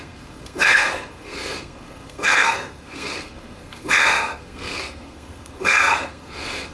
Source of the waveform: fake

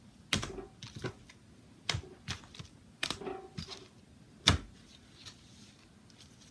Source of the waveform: real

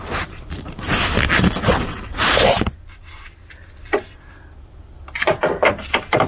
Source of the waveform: real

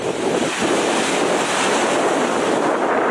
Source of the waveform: real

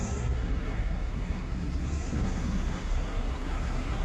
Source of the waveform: fake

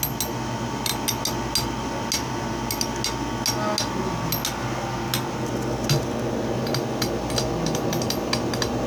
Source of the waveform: real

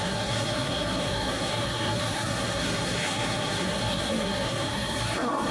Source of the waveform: fake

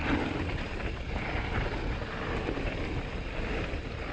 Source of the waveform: real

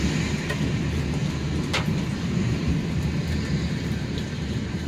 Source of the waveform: real